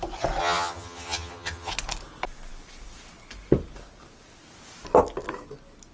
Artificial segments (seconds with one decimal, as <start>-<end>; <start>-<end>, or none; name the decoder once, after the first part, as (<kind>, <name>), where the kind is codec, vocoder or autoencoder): 0.4-1.7 (vocoder, HiFi-GAN)